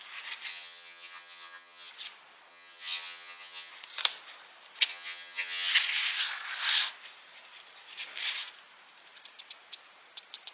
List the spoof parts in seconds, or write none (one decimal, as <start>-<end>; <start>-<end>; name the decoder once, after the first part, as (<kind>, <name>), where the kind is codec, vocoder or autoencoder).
0.5-1.9 (vocoder, HiFi-GAN); 2.5-3.7; 4.9-5.7